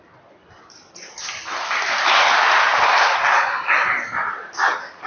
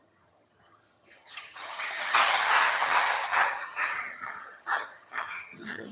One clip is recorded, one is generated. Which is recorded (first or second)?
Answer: first